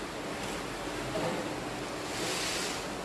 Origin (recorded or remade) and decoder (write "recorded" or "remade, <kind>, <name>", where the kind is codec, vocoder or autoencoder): recorded